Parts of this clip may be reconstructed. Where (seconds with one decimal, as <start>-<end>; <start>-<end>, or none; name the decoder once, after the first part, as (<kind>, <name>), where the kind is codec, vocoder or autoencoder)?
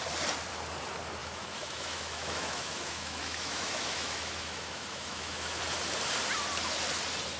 1.2-5.6 (autoencoder, DAC-VAE)